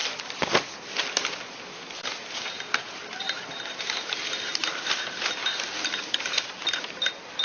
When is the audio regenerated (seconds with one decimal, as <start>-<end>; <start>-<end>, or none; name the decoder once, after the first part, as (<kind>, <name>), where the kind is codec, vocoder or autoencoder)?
none